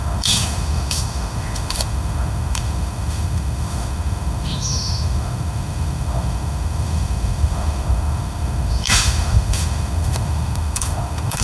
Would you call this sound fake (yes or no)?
yes